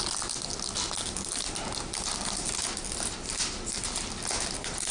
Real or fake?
real